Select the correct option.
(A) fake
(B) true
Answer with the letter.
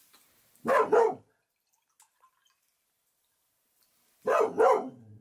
B